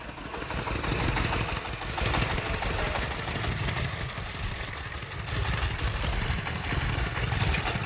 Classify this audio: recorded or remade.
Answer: recorded